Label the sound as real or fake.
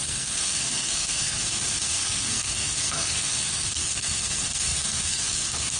fake